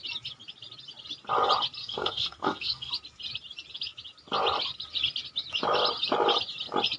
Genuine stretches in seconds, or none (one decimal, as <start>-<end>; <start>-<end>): 0.0-1.8; 2.9-7.0